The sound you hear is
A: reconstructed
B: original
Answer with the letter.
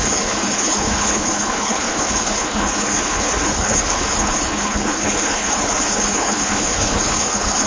A